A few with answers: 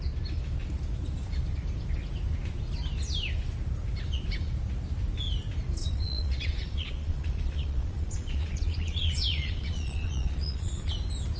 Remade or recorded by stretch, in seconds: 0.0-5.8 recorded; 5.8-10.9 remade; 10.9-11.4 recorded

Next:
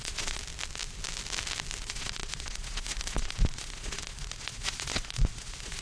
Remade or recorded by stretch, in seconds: 0.0-0.4 remade; 0.4-1.8 recorded; 1.8-5.8 remade

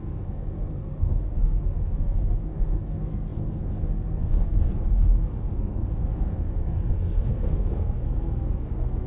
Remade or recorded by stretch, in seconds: 0.0-9.1 remade

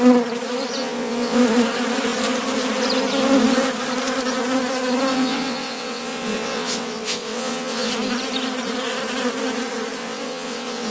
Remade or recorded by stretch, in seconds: 0.0-0.8 recorded; 0.8-1.4 remade; 1.4-5.1 recorded; 5.1-7.9 remade; 7.9-10.0 recorded; 10.0-10.9 remade

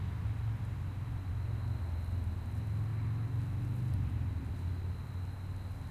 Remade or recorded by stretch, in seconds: 0.0-5.9 recorded

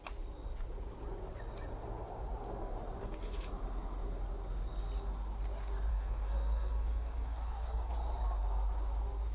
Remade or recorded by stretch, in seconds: 0.0-3.0 recorded; 3.0-3.5 remade; 3.5-5.9 recorded; 5.9-7.9 remade; 7.9-9.3 recorded

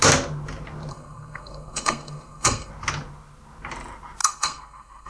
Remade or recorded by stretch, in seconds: 0.0-0.9 recorded; 0.9-2.7 remade; 2.7-4.2 recorded; 4.2-5.1 remade

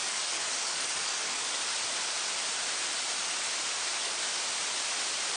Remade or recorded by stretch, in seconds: 0.0-1.6 remade; 1.6-5.4 recorded